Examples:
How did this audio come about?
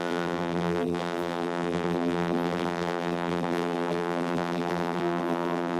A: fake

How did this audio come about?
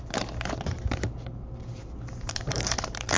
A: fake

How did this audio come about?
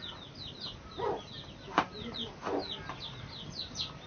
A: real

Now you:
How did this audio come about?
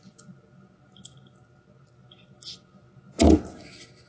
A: real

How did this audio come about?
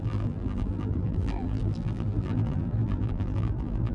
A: fake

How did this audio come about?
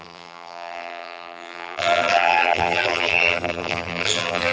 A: fake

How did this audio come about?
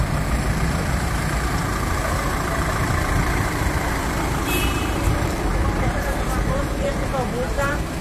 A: fake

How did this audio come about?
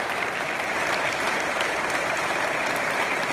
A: fake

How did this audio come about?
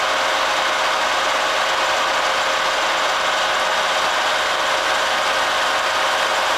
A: real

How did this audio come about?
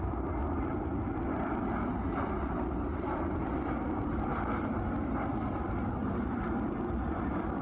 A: fake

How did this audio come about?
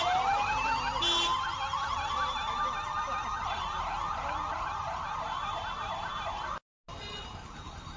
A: real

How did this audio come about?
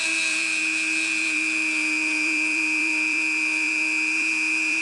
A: fake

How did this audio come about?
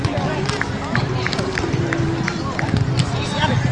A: real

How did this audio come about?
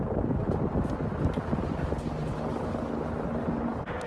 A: real